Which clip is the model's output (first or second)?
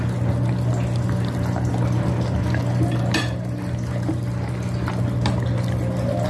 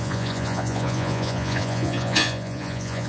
second